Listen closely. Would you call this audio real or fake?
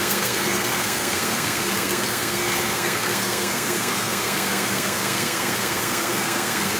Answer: fake